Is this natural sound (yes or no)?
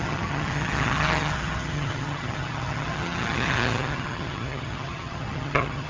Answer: no